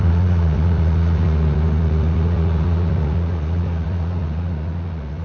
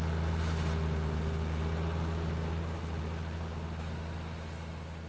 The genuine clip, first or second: second